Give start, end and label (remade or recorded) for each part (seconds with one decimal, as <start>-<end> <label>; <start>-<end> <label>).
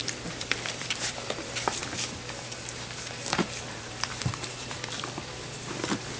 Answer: 0.0-1.8 remade; 1.8-3.7 recorded; 3.7-6.2 remade